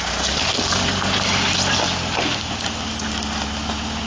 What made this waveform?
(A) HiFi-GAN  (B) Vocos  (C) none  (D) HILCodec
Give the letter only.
C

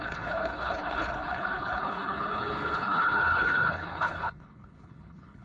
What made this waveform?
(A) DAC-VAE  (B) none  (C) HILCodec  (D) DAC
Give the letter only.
C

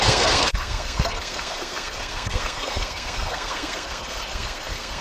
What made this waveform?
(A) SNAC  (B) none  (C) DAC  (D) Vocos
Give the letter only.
A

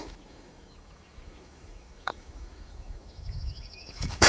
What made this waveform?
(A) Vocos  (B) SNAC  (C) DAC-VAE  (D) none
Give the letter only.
C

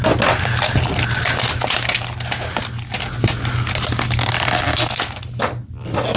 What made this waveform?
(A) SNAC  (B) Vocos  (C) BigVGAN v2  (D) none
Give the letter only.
D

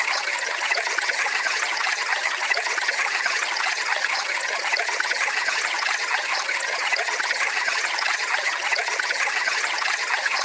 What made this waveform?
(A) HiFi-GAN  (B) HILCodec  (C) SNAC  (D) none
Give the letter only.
A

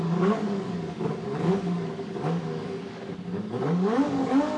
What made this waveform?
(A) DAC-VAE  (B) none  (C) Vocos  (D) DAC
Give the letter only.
D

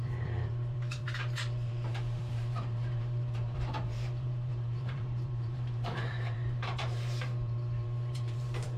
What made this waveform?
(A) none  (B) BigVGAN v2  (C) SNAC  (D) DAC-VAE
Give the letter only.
B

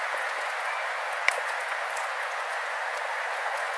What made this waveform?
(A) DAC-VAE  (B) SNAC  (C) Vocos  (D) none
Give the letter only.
C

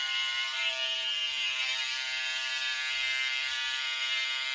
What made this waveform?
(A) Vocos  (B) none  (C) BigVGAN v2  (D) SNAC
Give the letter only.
C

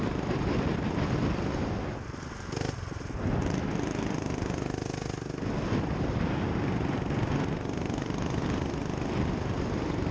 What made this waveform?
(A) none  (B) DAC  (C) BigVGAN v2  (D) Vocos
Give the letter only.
A